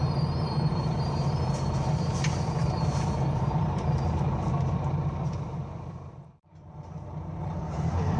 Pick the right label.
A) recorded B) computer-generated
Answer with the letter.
B